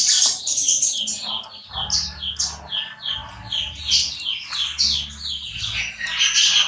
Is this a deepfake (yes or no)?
no